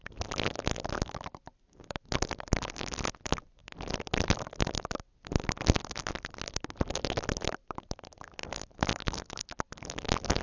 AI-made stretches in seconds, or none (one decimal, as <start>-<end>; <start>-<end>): none